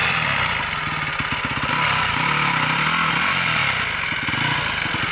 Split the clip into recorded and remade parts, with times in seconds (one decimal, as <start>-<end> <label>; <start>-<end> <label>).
0.0-5.1 recorded